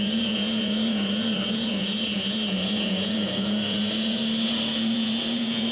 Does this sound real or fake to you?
fake